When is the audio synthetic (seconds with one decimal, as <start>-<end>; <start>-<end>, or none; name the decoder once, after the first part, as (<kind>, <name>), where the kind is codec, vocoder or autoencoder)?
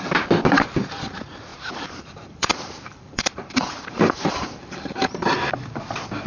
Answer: 1.5-5.3 (vocoder, BigVGAN v2)